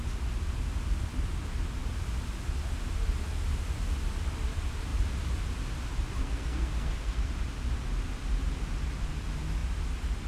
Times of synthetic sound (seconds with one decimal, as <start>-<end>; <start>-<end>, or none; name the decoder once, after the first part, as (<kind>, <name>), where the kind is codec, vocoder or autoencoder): 6.2-7.3 (codec, SNAC)